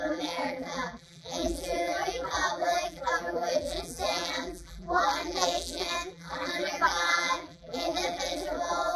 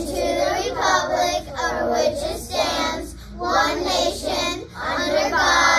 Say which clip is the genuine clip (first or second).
second